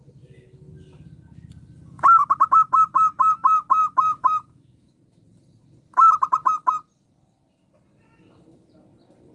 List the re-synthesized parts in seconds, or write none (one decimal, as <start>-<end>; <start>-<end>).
2.2-4.9